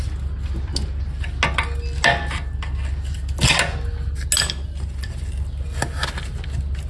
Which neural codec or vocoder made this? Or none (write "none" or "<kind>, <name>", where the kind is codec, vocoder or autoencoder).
none